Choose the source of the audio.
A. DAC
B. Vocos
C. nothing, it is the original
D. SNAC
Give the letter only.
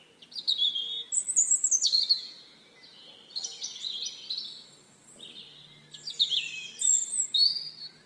C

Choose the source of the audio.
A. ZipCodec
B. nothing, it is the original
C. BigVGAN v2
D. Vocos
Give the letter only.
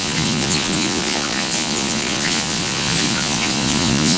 D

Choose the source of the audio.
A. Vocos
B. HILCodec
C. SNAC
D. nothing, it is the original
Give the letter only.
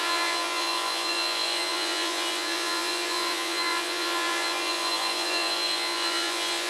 A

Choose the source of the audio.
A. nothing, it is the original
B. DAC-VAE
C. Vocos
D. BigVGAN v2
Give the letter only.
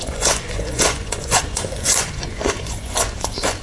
C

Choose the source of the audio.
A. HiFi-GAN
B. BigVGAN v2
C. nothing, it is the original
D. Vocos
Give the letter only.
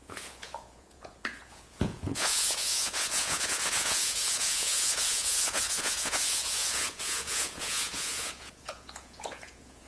D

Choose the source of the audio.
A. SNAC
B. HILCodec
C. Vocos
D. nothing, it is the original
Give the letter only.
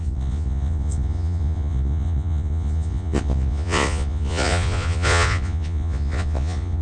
C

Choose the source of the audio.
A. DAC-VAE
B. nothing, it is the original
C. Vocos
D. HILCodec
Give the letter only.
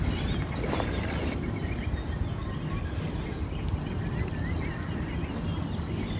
B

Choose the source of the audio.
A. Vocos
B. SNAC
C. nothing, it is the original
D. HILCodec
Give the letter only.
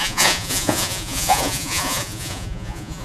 A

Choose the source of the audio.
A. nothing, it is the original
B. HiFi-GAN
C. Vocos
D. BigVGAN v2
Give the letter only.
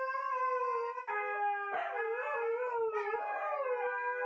A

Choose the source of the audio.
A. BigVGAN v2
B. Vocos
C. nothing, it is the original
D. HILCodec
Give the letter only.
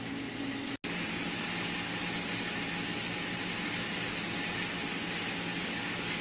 C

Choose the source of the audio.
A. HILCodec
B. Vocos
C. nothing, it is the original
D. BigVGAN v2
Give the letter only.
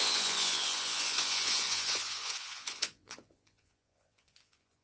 B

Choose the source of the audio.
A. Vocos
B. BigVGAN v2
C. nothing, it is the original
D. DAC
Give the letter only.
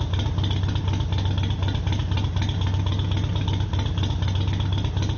C